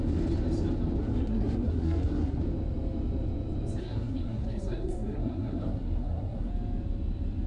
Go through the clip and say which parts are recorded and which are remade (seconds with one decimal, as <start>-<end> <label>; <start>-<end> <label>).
0.0-1.0 recorded; 1.0-2.4 remade; 2.4-3.8 recorded; 3.8-6.5 remade; 6.5-7.5 recorded